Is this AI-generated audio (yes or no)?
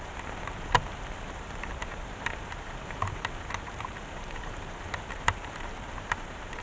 yes